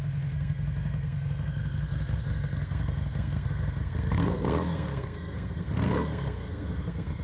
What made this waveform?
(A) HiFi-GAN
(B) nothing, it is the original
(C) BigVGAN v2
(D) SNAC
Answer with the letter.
D